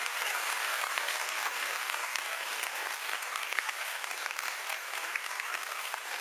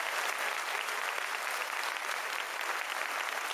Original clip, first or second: second